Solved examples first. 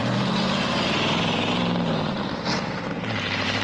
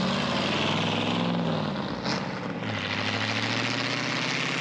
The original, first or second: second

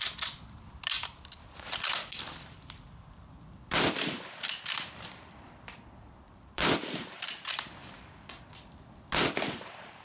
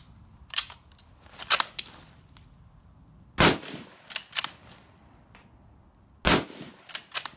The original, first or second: second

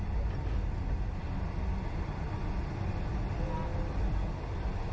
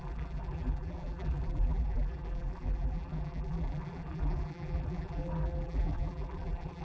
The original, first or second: first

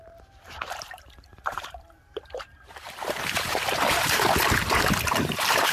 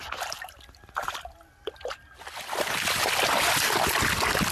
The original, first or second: second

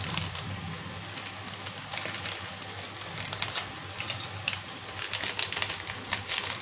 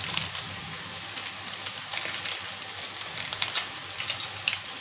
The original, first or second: first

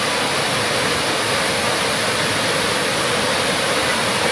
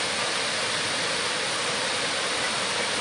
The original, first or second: first